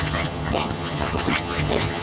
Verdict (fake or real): fake